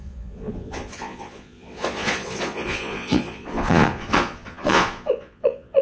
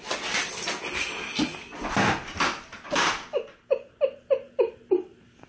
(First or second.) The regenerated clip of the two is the first